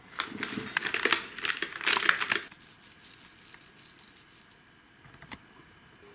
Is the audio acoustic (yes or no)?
yes